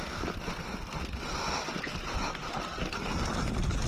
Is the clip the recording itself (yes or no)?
yes